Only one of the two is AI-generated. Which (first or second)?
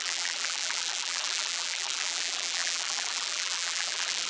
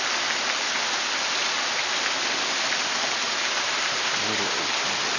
first